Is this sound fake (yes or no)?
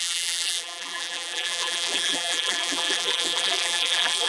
yes